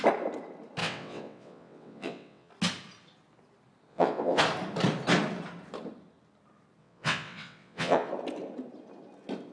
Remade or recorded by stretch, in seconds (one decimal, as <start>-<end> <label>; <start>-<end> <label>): 0.0-0.8 recorded; 0.8-2.5 remade; 2.5-3.9 recorded; 3.9-4.4 remade; 4.4-6.8 recorded; 6.8-8.1 remade; 8.1-9.5 recorded